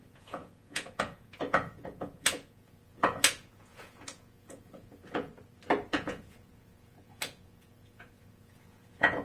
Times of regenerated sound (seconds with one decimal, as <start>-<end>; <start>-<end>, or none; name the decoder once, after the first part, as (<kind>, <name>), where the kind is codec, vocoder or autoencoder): 0.0-5.3 (vocoder, Vocos); 5.9-9.2